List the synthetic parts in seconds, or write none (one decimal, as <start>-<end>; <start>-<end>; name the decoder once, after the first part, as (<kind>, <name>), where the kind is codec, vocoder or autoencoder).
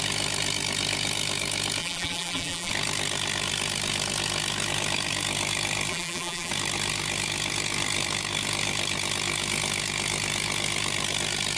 1.8-2.7 (vocoder, BigVGAN v2); 5.9-6.5